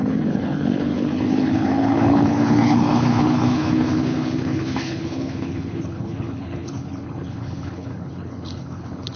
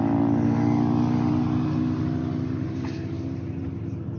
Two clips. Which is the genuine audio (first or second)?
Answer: second